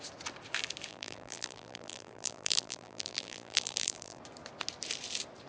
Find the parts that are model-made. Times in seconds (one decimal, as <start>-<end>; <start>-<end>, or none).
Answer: 0.9-4.2